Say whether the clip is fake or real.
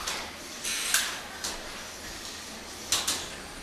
real